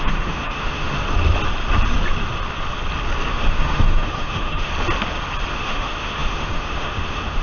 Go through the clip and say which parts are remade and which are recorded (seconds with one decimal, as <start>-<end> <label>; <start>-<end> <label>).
0.0-1.0 remade; 1.0-3.3 recorded; 3.3-4.7 remade; 4.7-5.5 recorded; 5.5-7.4 remade